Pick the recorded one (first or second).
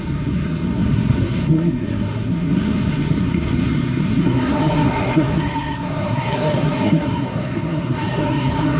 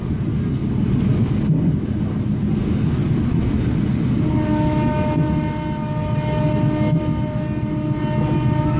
second